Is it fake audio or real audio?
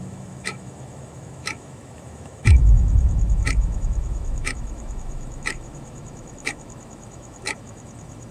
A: fake